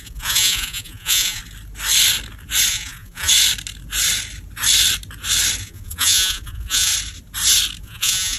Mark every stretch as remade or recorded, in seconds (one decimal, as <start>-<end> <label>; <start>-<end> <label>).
0.0-1.4 remade; 1.4-2.7 recorded; 2.7-3.3 remade; 3.3-5.6 recorded; 5.6-6.9 remade; 6.9-7.8 recorded; 7.8-8.4 remade